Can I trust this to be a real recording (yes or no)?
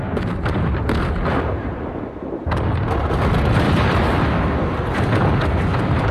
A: yes